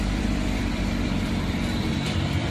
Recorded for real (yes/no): no